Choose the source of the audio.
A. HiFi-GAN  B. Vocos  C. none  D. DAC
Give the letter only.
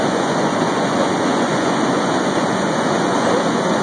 B